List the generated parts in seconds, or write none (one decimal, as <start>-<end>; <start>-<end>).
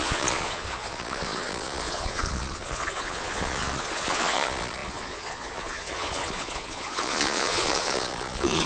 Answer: 0.0-8.7